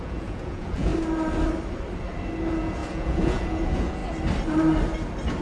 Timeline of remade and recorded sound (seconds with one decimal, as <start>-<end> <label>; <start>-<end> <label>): 0.0-0.9 remade; 0.9-2.4 recorded; 2.4-4.0 remade; 4.0-5.4 recorded